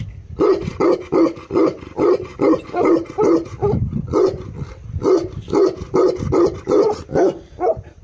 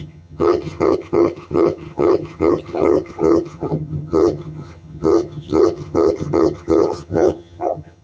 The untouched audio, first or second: first